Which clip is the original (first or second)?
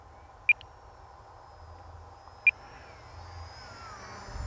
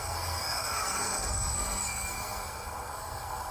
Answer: first